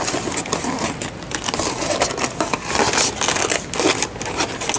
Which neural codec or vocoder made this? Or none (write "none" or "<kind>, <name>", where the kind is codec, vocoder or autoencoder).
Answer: none